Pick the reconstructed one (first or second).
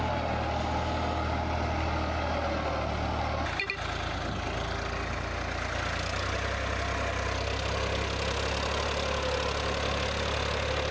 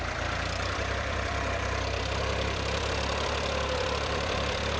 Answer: second